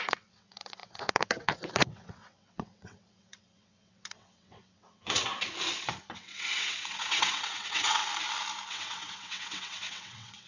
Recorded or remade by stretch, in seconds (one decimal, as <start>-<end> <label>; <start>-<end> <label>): 0.0-5.3 remade; 5.3-6.1 recorded; 6.1-8.0 remade; 8.0-8.7 recorded; 8.7-10.5 remade

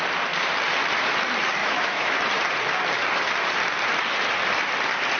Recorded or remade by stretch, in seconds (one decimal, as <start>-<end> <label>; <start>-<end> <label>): 0.0-1.6 recorded; 1.6-2.2 remade; 2.2-5.2 recorded

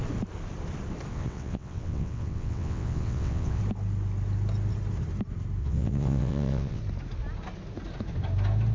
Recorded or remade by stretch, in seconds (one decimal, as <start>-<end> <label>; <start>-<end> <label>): 0.0-1.1 recorded; 1.1-3.6 remade; 3.6-5.6 recorded; 5.6-6.8 remade; 6.8-8.7 recorded

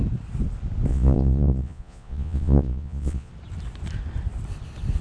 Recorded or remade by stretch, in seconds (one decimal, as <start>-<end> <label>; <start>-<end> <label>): 0.0-0.9 recorded; 0.9-3.3 remade; 3.3-5.0 recorded

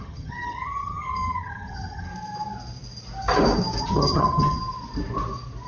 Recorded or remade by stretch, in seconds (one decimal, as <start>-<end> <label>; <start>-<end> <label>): 0.0-2.1 remade; 2.1-3.8 recorded; 3.8-4.6 remade; 4.6-5.7 recorded

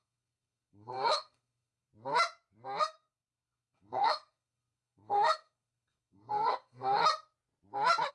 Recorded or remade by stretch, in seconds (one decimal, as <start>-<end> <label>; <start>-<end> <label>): 0.0-1.9 remade; 1.9-2.8 recorded; 2.8-7.0 remade; 7.0-8.1 recorded